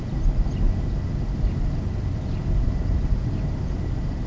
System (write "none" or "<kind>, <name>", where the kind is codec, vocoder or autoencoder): none